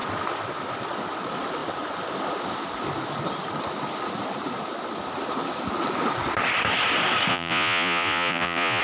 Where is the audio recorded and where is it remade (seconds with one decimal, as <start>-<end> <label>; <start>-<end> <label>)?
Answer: 0.0-7.3 recorded; 7.3-8.8 remade